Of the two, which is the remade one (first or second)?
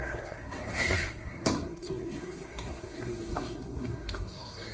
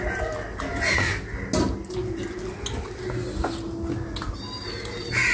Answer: first